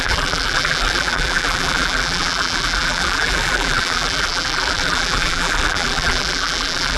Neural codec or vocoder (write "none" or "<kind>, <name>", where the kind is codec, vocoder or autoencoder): vocoder, BigVGAN v2